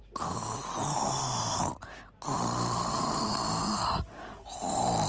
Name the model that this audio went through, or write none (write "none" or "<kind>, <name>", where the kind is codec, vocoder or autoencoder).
none